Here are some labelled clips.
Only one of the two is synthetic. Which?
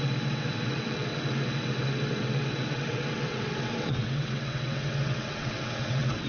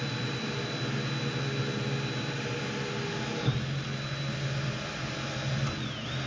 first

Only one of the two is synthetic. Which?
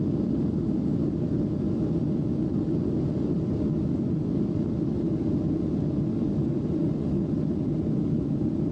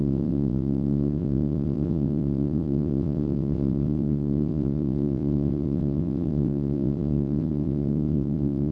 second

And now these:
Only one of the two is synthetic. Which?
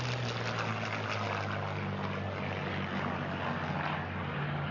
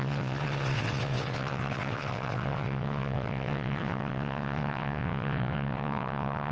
second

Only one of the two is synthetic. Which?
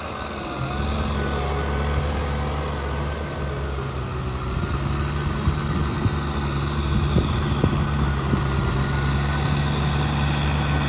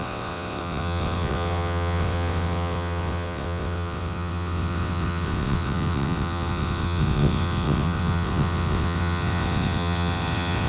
second